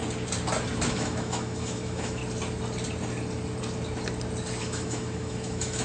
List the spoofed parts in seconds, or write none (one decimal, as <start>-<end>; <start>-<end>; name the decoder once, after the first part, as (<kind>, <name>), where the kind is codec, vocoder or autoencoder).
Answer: 0.9-2.2 (autoencoder, DAC-VAE); 4.6-5.8